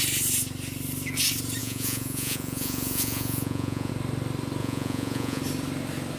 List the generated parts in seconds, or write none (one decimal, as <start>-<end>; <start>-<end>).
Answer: 1.6-3.9; 4.6-5.4